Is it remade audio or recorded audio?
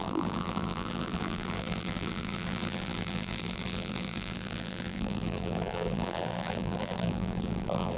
remade